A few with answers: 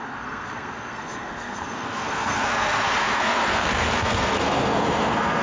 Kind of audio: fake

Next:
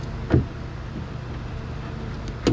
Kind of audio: real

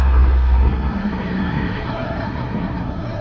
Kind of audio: fake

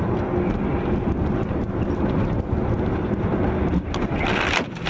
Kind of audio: real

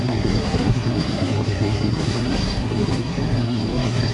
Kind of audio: fake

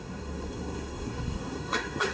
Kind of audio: fake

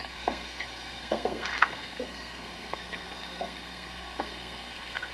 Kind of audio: fake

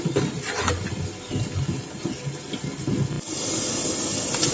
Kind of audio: real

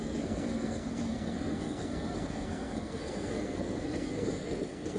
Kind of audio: fake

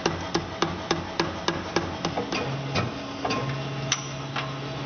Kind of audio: real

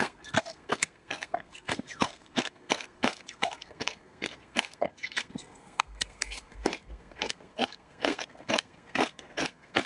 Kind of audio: fake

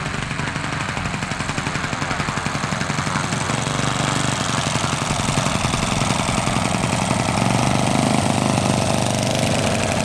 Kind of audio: real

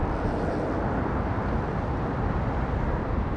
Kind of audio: real